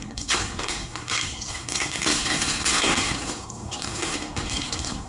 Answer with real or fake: fake